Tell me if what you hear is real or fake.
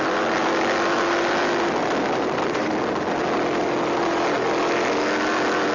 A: real